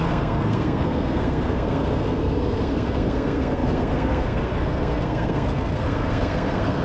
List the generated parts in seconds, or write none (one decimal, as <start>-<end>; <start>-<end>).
0.0-6.8